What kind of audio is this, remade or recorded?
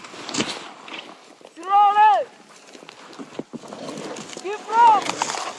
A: recorded